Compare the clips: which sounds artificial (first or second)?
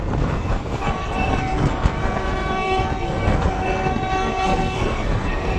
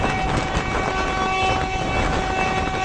first